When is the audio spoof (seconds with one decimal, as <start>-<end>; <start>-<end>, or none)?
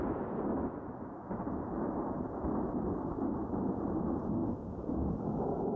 none